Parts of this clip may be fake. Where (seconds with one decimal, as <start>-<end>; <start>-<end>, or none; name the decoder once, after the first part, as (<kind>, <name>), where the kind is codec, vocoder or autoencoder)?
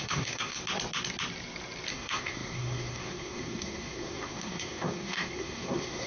0.0-0.6 (codec, SNAC); 1.9-6.1